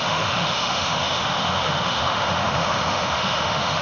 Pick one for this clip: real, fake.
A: fake